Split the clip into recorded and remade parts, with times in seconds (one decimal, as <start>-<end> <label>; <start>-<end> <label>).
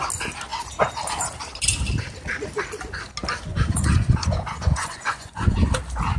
0.0-3.5 recorded; 3.5-5.8 remade; 5.8-6.2 recorded